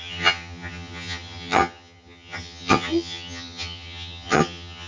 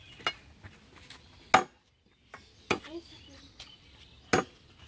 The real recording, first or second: second